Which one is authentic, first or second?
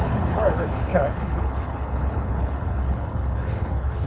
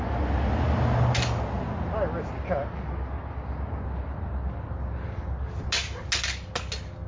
second